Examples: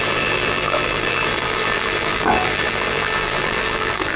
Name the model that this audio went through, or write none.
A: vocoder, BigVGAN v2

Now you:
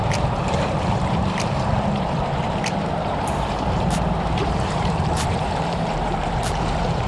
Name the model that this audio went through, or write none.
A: vocoder, BigVGAN v2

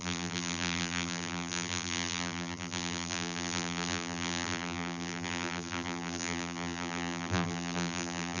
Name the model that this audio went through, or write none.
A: vocoder, BigVGAN v2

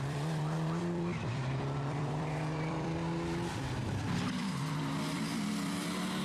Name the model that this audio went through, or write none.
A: vocoder, BigVGAN v2